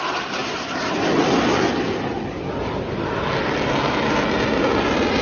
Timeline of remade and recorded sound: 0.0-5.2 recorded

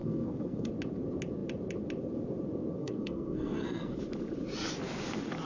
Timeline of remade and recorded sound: 0.0-0.7 remade; 0.7-2.8 recorded; 2.8-4.0 remade; 4.0-5.5 recorded

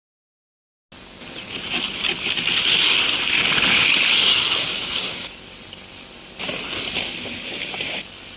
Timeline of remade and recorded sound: 0.0-4.3 recorded; 4.3-5.4 remade; 5.4-8.4 recorded

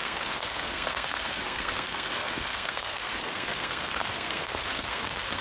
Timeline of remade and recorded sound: 0.0-5.4 remade

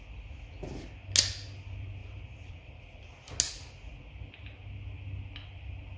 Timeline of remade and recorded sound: 0.0-2.0 recorded; 2.0-3.3 remade; 3.3-6.0 recorded

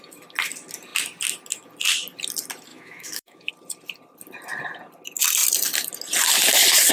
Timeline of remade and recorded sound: 0.0-2.7 recorded; 2.7-3.5 remade; 3.5-6.9 recorded